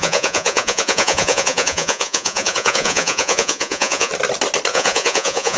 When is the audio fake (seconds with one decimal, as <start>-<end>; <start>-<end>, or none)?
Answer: 0.0-4.1; 4.7-5.6